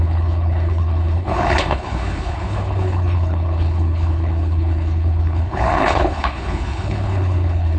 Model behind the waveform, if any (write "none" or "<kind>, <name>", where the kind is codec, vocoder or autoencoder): codec, HILCodec